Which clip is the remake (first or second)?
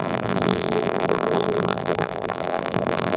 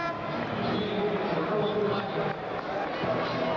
first